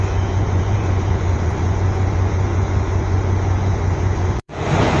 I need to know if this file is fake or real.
fake